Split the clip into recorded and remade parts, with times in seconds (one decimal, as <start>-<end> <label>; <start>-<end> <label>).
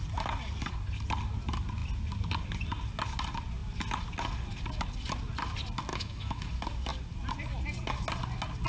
0.0-5.9 recorded; 5.9-6.5 remade; 6.5-8.7 recorded